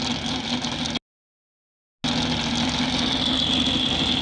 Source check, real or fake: real